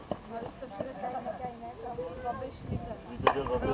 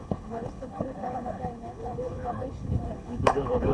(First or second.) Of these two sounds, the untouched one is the first